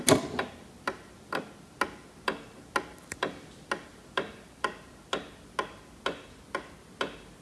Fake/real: real